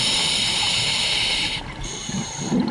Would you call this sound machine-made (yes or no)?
no